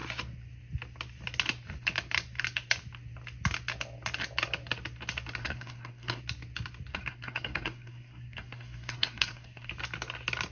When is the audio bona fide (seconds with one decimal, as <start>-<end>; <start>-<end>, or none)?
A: 0.0-5.4; 6.2-6.9; 9.7-10.5